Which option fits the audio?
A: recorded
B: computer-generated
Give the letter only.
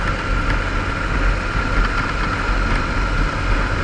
A